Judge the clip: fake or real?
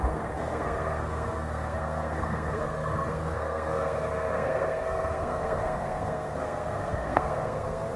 fake